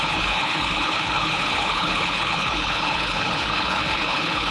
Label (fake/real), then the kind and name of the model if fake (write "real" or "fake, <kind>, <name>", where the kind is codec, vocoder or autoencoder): fake, codec, HILCodec